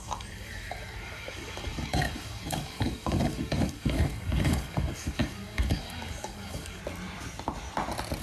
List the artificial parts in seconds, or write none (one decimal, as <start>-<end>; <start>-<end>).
0.0-6.8